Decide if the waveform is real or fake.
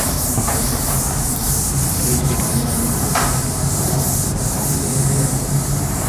fake